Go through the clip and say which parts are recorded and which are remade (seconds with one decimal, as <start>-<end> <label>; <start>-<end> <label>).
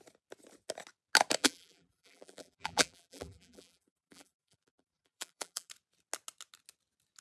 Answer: 0.0-1.4 recorded; 1.4-5.7 remade; 5.7-7.2 recorded